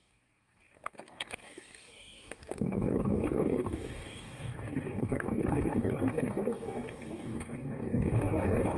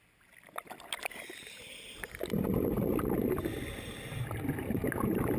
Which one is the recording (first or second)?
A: second